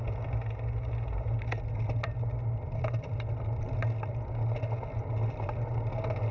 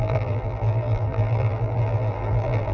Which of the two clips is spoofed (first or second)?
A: second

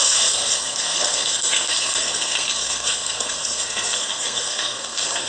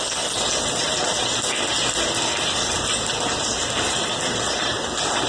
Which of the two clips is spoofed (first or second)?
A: first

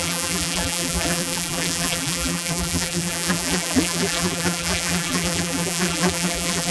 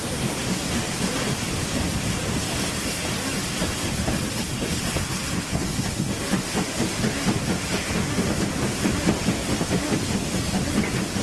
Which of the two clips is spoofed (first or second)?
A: first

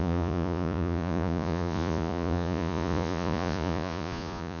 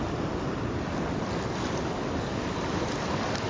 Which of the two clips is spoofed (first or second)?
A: first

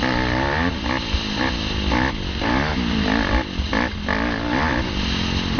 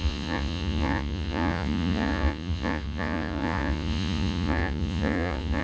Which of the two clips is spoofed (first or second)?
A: second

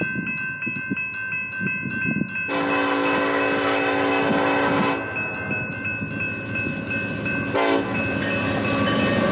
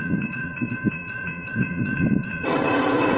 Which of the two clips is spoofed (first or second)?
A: second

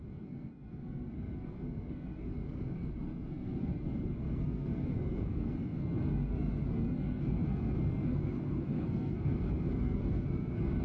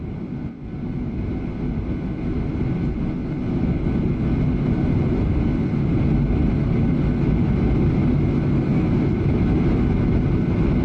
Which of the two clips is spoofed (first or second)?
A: first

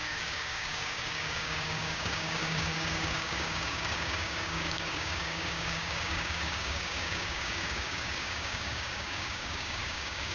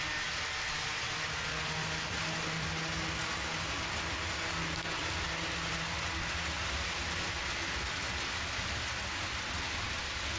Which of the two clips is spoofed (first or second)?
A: first